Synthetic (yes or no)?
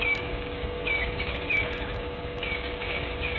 yes